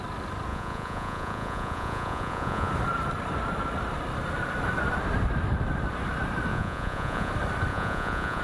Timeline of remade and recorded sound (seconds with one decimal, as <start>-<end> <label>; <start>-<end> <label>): 0.0-0.5 recorded; 0.5-2.7 remade; 2.7-6.5 recorded; 6.5-7.3 remade; 7.3-7.7 recorded; 7.7-8.4 remade